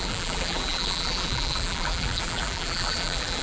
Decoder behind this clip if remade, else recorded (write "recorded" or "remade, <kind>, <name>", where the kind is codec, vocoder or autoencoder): remade, vocoder, BigVGAN v2